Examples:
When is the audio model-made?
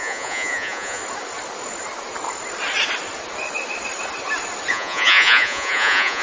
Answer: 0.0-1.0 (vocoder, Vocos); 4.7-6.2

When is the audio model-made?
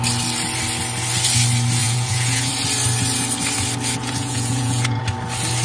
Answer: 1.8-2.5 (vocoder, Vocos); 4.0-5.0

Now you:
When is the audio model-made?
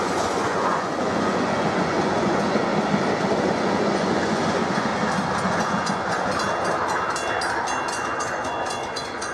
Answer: 0.0-2.7 (vocoder, Vocos); 3.4-4.9; 5.4-6.3; 7.9-9.3